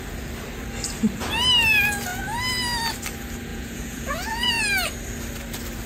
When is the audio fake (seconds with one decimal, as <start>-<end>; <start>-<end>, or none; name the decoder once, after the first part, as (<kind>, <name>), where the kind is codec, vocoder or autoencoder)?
3.5-4.6 (vocoder, Vocos)